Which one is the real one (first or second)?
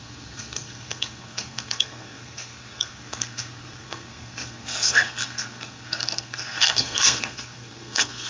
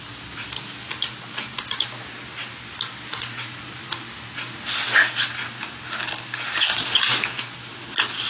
second